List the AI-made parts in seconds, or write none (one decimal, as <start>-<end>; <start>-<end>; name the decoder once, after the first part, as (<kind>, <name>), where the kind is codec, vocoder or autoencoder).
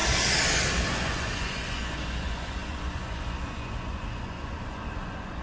0.9-5.4 (vocoder, Vocos)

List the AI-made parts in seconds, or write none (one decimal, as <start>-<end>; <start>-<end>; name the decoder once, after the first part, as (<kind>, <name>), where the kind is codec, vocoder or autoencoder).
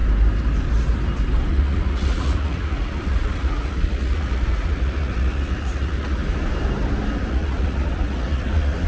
1.5-6.2 (vocoder, Vocos); 7.3-8.9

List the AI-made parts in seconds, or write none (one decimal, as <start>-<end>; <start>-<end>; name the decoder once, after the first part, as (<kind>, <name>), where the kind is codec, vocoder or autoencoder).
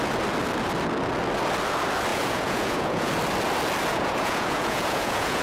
2.1-3.1 (vocoder, Vocos); 3.9-5.4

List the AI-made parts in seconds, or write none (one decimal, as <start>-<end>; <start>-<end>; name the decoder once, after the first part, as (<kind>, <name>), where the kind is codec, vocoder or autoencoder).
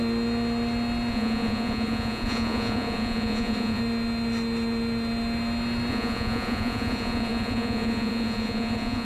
1.1-3.8 (vocoder, Vocos); 5.9-9.0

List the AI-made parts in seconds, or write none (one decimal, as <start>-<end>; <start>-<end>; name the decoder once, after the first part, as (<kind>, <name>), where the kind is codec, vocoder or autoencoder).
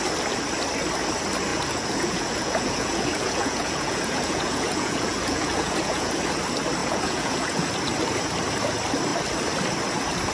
1.5-6.1 (vocoder, Vocos); 6.8-7.7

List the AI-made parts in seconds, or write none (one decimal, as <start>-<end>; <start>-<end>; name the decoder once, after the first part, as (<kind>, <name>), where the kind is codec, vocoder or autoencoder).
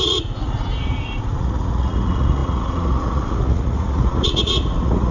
0.0-5.1 (vocoder, Vocos)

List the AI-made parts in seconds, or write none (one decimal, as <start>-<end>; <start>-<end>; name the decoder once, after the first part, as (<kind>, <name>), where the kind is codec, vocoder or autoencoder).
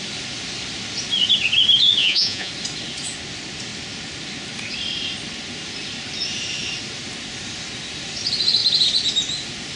2.0-2.5 (vocoder, Vocos)